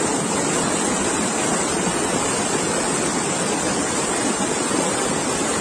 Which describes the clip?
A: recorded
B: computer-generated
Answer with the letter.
A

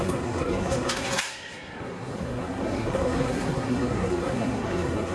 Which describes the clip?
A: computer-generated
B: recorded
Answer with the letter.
A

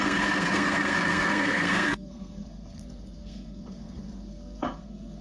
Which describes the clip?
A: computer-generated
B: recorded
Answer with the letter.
A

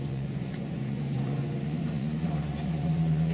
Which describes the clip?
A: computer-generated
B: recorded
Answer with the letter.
A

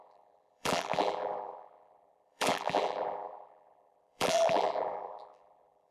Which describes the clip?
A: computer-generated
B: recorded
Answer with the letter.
A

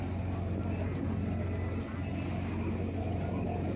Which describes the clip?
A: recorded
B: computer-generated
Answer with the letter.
A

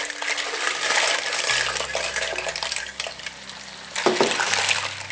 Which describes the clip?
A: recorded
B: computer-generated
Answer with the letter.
A